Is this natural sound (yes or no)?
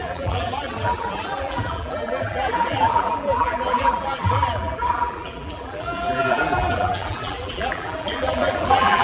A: no